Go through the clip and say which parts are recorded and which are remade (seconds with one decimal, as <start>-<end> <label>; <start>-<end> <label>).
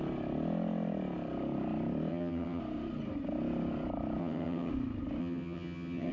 0.0-2.1 recorded; 2.1-2.6 remade; 2.6-4.2 recorded; 4.2-4.7 remade; 4.7-5.2 recorded; 5.2-6.1 remade